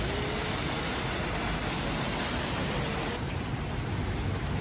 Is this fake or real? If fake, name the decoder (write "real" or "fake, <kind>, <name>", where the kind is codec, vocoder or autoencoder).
real